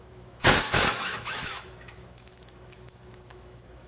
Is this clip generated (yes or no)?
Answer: yes